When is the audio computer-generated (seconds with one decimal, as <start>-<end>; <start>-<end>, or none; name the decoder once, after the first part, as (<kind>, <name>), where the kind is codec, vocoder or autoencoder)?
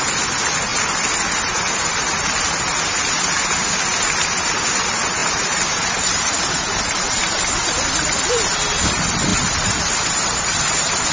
5.2-8.3 (vocoder, BigVGAN v2); 9.3-10.6